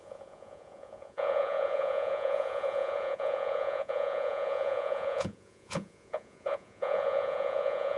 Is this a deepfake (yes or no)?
yes